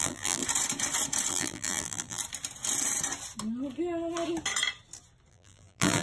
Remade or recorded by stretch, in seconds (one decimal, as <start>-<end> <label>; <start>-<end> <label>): 0.0-0.4 remade; 0.4-1.3 recorded; 1.3-2.2 remade; 2.2-5.3 recorded; 5.3-6.0 remade